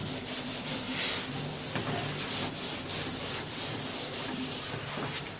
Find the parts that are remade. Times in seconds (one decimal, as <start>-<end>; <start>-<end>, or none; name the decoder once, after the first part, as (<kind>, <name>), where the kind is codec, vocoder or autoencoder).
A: none